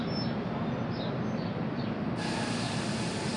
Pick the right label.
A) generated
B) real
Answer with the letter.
B